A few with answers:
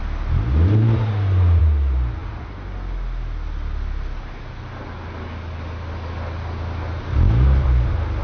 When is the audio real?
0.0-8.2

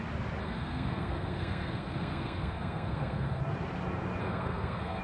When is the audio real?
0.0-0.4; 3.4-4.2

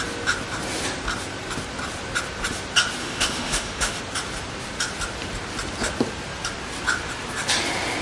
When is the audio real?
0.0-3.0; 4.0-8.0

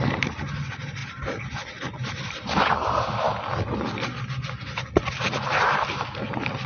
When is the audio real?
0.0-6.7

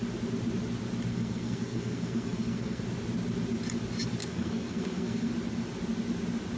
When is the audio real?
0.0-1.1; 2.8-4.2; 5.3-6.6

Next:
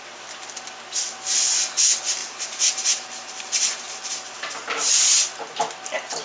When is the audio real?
0.0-2.2; 4.1-6.2